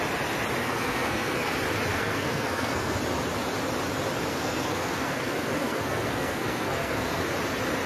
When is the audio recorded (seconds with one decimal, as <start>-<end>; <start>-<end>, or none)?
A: 0.0-0.6; 1.5-1.9; 3.0-4.3; 7.2-7.9